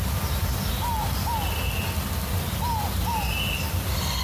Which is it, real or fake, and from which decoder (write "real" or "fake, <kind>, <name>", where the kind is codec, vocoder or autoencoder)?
real